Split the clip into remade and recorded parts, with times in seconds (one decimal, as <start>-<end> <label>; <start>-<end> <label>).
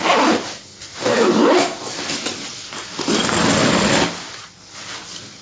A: 0.0-5.4 recorded